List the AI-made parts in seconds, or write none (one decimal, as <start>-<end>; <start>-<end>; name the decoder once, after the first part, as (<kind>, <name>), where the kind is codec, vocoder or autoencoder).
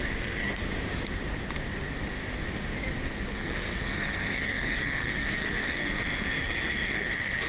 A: 0.0-0.6 (codec, SNAC); 3.3-7.5